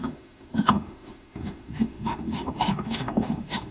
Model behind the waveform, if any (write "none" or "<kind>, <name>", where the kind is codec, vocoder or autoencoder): autoencoder, DAC-VAE